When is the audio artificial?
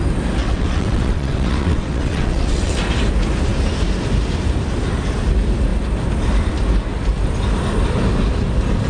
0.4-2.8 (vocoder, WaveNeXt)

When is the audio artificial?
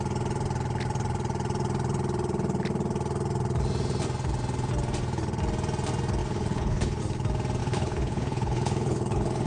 6.2-7.0 (codec, HILCodec); 7.6-9.5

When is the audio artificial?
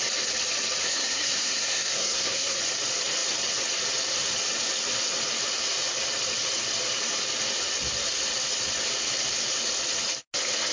0.8-2.6 (codec, SNAC)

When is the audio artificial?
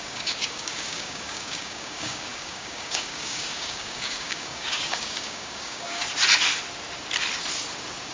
0.0-6.0 (codec, DAC)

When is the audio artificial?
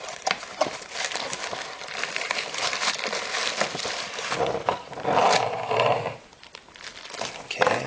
0.0-6.6 (vocoder, BigVGAN v2)